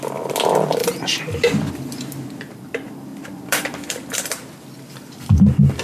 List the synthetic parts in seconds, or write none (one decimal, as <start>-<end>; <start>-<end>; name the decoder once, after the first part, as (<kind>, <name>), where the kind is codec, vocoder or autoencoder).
0.0-5.8 (vocoder, BigVGAN v2)